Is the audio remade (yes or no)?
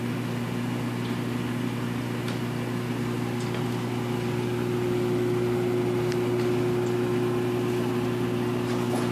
no